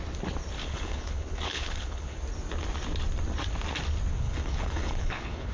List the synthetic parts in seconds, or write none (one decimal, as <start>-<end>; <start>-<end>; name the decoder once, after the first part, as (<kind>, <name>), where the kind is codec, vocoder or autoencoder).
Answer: 0.6-2.2 (codec, HILCodec); 4.1-5.5